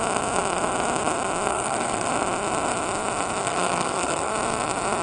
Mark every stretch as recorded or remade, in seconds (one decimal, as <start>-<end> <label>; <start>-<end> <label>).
0.0-1.5 recorded; 1.5-2.1 remade; 2.1-3.4 recorded; 3.4-4.3 remade; 4.3-5.0 recorded

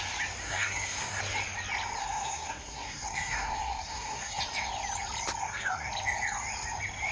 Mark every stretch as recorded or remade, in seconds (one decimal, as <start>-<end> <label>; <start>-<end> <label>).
0.0-0.4 recorded; 0.4-1.2 remade; 1.2-2.0 recorded; 2.0-4.4 remade; 4.4-5.4 recorded; 5.4-5.9 remade; 5.9-7.1 recorded

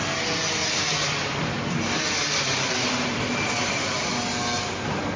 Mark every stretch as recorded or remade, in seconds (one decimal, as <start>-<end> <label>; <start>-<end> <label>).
0.0-5.2 recorded

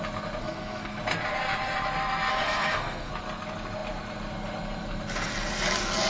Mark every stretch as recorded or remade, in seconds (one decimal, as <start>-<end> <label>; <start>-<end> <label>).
0.0-0.4 recorded; 0.4-1.0 remade; 1.0-2.3 recorded; 2.3-3.1 remade; 3.1-6.1 recorded

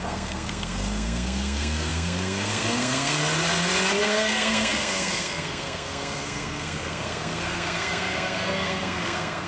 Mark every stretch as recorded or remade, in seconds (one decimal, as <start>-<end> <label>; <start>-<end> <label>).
0.0-3.2 remade; 3.2-4.0 recorded; 4.0-9.5 remade

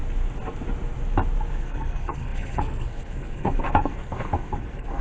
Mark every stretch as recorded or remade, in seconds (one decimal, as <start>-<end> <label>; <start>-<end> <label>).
0.0-1.5 recorded; 1.5-5.0 remade